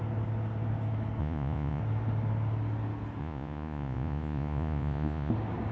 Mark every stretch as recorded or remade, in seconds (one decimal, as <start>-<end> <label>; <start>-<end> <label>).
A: 0.0-1.2 recorded; 1.2-1.8 remade; 1.8-3.2 recorded; 3.2-5.3 remade; 5.3-5.7 recorded

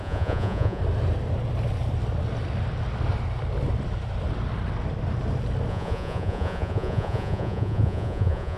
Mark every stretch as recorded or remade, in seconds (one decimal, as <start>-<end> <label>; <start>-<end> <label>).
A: 0.0-0.8 remade; 0.8-5.7 recorded; 5.7-8.6 remade

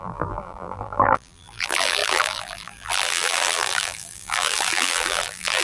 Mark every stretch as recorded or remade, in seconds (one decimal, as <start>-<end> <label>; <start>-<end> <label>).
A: 0.0-5.6 remade

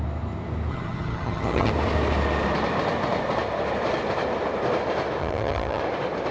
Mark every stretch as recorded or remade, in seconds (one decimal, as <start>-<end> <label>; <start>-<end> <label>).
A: 0.0-0.7 recorded; 0.7-1.7 remade; 1.7-5.2 recorded; 5.2-5.8 remade; 5.8-6.3 recorded

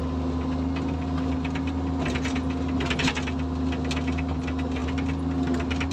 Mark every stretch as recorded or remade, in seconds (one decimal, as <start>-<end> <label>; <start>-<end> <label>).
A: 0.0-5.9 recorded

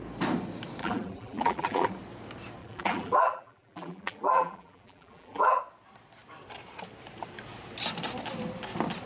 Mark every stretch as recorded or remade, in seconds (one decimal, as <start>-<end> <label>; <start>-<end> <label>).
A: 0.0-0.8 recorded; 0.8-1.9 remade; 1.9-2.6 recorded; 2.6-5.6 remade; 5.6-9.1 recorded

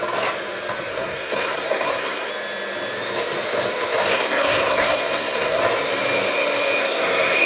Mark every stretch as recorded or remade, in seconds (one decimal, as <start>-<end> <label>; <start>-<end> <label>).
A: 0.0-0.9 recorded; 0.9-2.3 remade; 2.3-4.1 recorded; 4.1-5.6 remade; 5.6-6.8 recorded; 6.8-7.5 remade